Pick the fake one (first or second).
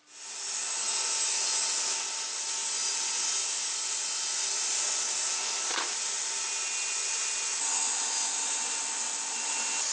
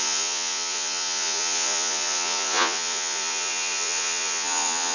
second